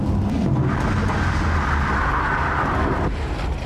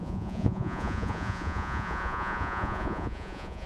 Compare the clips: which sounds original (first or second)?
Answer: first